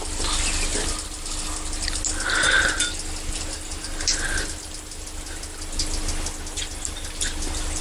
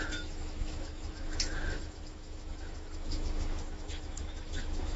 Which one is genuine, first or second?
first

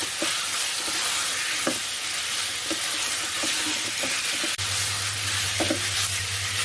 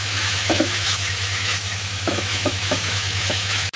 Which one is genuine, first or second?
first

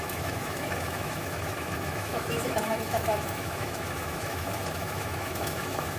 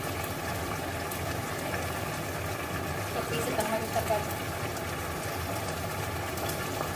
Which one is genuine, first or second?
second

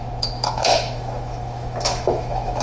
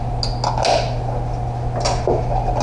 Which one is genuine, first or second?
second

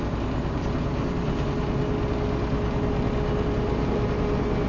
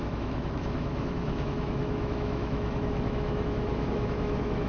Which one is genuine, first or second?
first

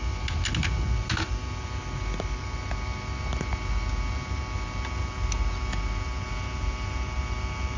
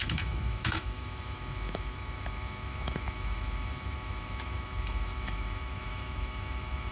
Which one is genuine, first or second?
first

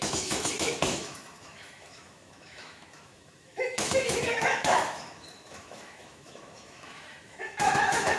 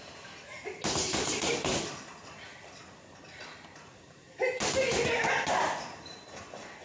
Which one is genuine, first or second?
second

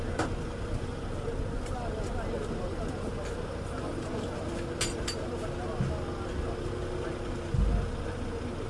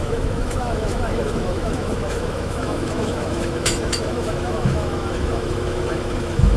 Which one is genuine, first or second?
first